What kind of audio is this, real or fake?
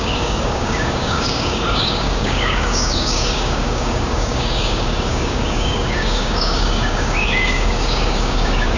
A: fake